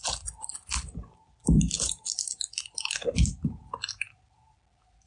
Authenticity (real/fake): real